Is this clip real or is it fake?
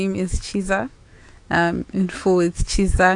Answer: fake